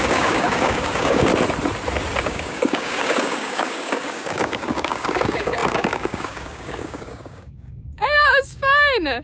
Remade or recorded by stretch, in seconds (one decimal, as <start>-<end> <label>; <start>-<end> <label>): 0.0-1.3 remade; 1.3-2.2 recorded; 2.2-9.2 remade